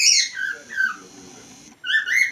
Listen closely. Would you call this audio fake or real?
real